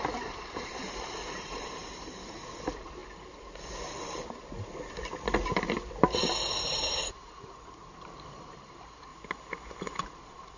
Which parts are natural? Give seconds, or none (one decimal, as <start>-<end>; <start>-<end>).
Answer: 3.0-6.6; 9.1-10.0